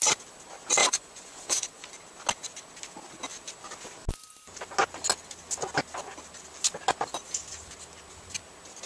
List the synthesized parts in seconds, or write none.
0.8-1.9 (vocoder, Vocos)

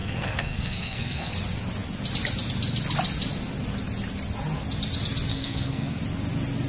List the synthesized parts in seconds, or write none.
0.0-1.3 (codec, SNAC); 5.3-6.0

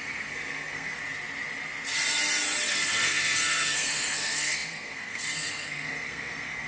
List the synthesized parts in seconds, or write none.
0.0-1.0 (codec, SNAC); 2.7-6.7

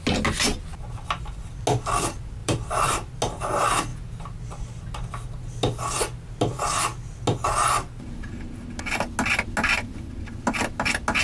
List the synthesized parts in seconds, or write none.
2.4-3.1 (vocoder, BigVGAN v2)

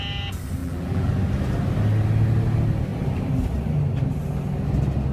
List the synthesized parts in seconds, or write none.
0.6-1.1 (vocoder, BigVGAN v2)

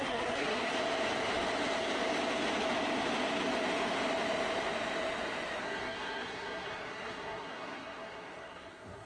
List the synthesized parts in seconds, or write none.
0.0-0.7 (codec, SNAC); 5.6-9.1

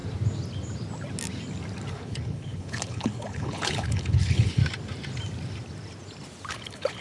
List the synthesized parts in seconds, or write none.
1.9-4.6 (codec, HILCodec); 6.5-7.0